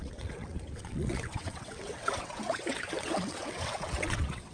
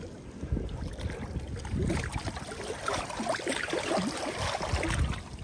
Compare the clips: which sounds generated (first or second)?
first